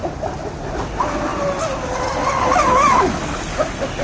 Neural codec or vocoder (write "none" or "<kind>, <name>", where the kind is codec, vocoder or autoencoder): none